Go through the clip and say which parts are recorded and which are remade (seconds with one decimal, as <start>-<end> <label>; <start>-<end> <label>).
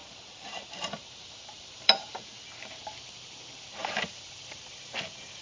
0.0-2.2 remade; 2.2-3.8 recorded; 3.8-4.3 remade; 4.3-5.4 recorded